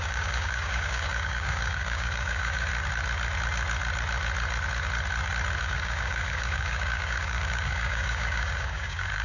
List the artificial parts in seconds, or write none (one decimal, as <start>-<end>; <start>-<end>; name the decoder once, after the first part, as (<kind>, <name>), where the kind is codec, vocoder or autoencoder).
0.0-2.7 (codec, DAC); 5.6-9.2